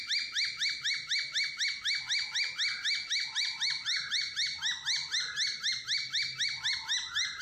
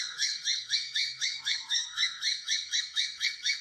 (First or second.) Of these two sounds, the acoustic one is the first